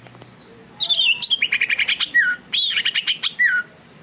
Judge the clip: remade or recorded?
recorded